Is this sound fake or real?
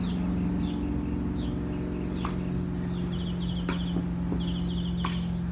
real